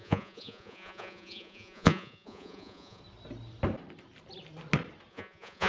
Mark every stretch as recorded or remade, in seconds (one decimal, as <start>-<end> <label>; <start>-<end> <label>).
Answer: 0.0-3.0 remade; 3.0-5.1 recorded; 5.1-5.7 remade